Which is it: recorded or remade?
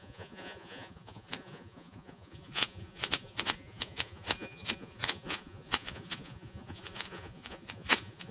remade